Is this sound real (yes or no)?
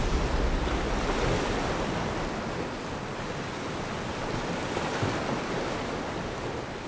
yes